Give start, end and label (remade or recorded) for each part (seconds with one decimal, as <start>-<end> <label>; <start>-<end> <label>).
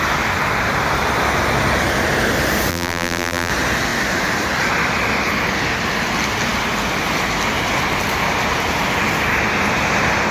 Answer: 0.0-2.7 recorded; 2.7-3.5 remade; 3.5-10.3 recorded